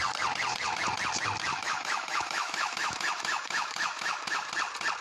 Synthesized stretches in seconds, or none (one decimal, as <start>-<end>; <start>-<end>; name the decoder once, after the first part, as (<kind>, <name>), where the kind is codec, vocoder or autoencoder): 1.5-4.5 (autoencoder, DAC-VAE)

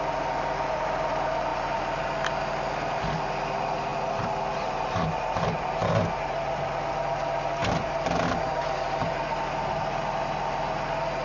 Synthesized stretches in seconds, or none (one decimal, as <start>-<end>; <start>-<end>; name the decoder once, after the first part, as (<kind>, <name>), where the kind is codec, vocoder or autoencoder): none

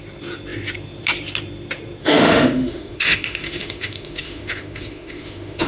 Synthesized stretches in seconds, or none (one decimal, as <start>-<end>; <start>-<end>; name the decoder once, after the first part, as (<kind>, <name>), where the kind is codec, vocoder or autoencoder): 2.0-5.7 (autoencoder, DAC-VAE)

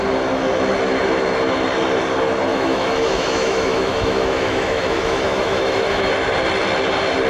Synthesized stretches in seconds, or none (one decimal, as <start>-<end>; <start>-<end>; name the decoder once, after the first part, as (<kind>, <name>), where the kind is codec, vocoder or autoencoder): 2.5-6.1 (autoencoder, DAC-VAE)

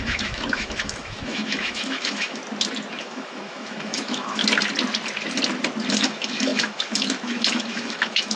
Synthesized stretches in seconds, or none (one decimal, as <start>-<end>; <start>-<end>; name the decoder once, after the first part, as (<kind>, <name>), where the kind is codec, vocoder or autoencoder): 0.0-2.4 (autoencoder, DAC-VAE); 3.0-4.4; 5.9-8.4

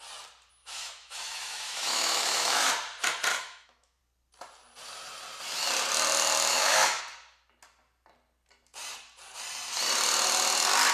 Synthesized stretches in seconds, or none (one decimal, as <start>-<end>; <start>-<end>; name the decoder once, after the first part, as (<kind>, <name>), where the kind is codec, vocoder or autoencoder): 0.6-2.7 (autoencoder, DAC-VAE); 3.3-4.0; 6.5-7.0

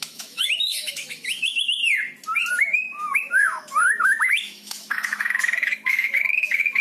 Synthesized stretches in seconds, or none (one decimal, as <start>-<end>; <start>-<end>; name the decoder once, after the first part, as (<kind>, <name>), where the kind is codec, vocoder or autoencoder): 0.0-1.8 (autoencoder, DAC-VAE); 2.5-6.8